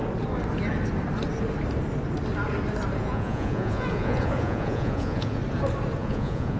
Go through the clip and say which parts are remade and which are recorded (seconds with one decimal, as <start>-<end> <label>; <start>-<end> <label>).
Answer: 0.0-3.0 recorded; 3.0-5.4 remade; 5.4-6.0 recorded; 6.0-6.6 remade